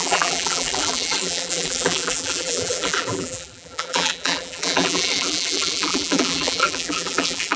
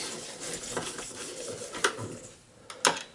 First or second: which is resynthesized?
first